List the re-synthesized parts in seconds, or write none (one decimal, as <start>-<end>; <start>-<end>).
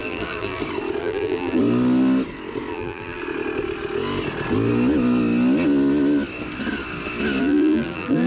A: 0.0-0.6; 1.0-1.6; 2.7-3.2; 7.4-8.3